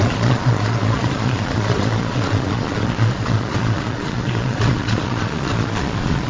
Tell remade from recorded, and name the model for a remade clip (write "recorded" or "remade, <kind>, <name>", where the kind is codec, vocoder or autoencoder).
remade, vocoder, Vocos